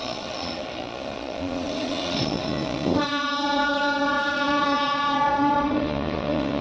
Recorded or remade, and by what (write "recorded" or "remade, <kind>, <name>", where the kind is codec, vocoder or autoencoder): remade, vocoder, Vocos